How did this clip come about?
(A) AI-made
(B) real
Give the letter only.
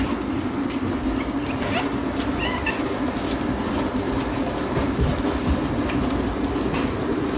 B